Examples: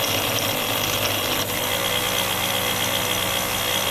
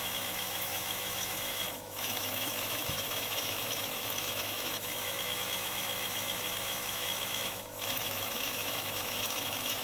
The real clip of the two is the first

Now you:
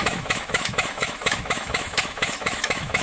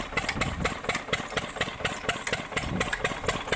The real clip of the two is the second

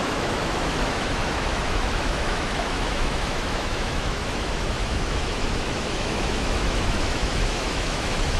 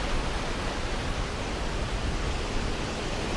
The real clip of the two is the second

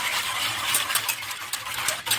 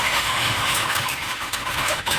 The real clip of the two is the first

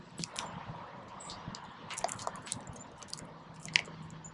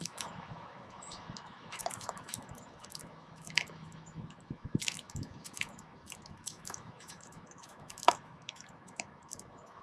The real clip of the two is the first